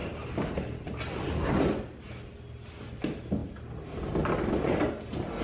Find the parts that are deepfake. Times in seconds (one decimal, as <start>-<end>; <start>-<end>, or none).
1.5-5.4